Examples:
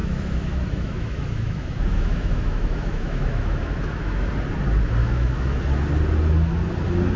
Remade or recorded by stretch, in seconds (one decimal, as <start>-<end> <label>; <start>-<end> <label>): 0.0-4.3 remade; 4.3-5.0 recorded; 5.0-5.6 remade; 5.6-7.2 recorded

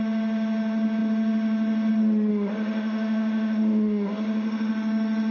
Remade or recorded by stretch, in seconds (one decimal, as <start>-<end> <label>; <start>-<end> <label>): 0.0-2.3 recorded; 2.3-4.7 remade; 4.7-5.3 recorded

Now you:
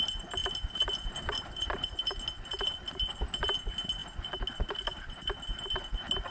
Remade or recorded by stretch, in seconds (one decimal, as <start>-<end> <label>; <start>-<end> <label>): 0.0-6.3 recorded

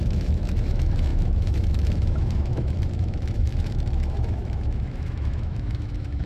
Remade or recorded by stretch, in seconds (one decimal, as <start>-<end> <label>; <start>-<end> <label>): 0.0-6.3 remade